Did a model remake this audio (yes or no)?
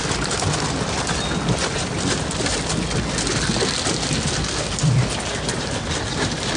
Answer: no